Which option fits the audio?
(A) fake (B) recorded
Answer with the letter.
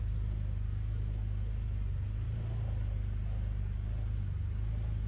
B